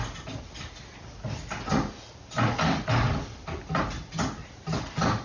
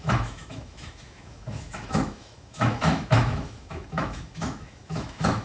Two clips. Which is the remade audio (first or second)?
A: second